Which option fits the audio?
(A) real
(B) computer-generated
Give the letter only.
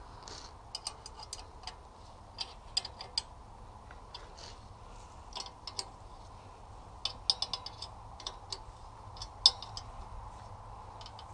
A